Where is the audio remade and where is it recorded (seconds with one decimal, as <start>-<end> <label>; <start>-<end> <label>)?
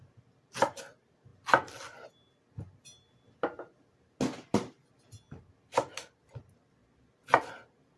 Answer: 0.0-6.8 recorded; 6.8-7.5 remade; 7.5-8.0 recorded